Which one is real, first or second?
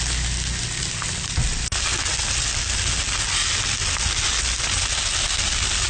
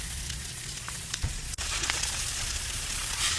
first